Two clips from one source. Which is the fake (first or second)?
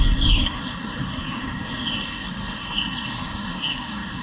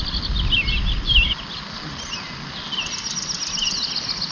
first